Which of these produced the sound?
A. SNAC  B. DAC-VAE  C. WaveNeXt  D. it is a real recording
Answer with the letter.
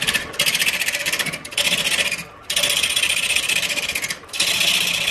D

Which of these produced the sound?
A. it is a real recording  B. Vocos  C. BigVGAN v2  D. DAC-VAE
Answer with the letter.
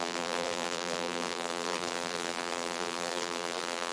C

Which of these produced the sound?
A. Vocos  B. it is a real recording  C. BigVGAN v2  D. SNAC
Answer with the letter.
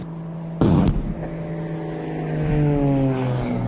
B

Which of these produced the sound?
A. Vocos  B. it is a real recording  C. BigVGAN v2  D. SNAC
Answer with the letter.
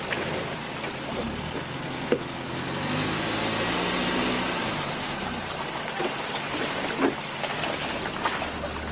B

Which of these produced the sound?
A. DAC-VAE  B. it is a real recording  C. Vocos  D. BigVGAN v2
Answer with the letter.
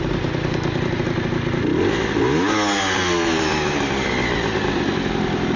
B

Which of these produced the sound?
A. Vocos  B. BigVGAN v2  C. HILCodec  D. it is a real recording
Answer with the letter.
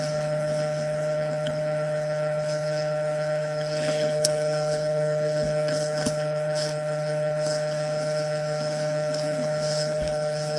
C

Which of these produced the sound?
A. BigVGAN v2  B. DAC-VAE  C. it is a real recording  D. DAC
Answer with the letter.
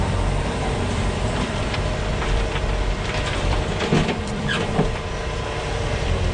A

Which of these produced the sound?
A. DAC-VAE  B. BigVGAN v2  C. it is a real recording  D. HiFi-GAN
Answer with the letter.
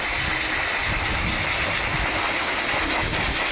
C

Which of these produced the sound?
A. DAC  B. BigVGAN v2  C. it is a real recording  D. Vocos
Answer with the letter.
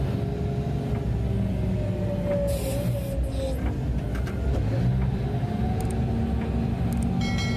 C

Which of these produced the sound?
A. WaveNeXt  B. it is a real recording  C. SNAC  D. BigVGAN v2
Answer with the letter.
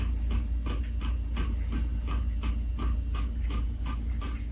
B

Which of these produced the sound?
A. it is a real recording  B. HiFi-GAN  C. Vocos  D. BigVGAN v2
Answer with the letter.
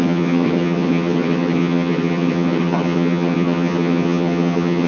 B